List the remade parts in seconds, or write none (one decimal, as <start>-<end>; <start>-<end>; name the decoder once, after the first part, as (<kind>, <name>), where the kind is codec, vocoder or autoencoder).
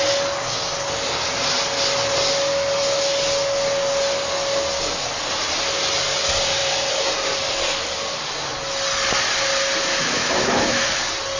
9.8-10.8 (autoencoder, DAC-VAE)